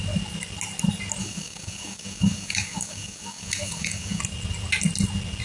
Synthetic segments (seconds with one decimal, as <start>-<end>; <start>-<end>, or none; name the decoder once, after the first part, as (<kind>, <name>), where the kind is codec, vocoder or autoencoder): 1.2-4.2 (codec, DAC)